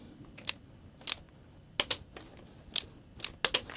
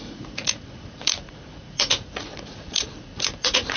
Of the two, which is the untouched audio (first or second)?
first